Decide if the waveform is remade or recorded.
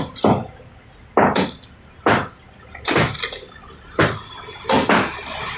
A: recorded